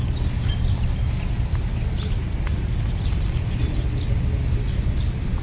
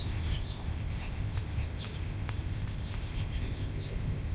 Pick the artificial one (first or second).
second